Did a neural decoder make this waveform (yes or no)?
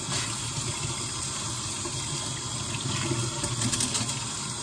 no